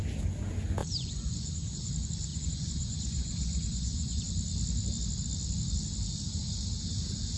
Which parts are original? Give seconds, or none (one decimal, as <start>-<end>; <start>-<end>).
0.0-0.8; 1.9-2.3; 4.2-7.4